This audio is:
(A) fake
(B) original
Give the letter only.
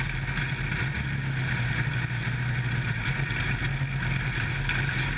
B